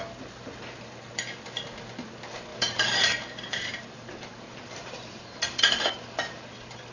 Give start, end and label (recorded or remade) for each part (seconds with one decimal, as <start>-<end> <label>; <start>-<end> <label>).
0.0-2.5 recorded; 2.5-5.6 remade; 5.6-6.9 recorded